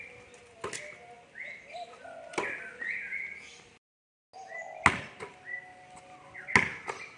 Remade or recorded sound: recorded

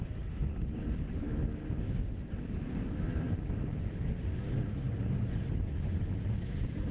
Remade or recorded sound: recorded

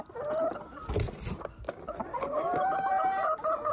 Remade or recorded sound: recorded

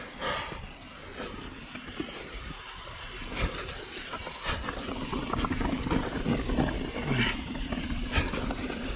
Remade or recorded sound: recorded